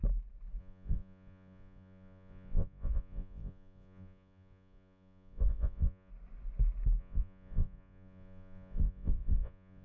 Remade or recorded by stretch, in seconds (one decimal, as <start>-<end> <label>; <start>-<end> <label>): 0.0-0.6 recorded; 0.6-6.1 remade; 6.1-7.0 recorded; 7.0-9.8 remade